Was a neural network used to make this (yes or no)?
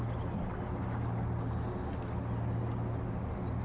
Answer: no